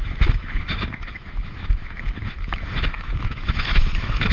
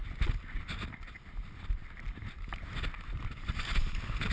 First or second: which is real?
second